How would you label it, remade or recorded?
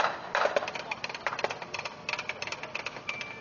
recorded